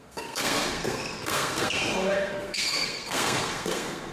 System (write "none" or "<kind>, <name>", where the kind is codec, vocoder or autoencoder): codec, SNAC